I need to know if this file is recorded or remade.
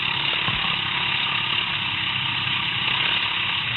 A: recorded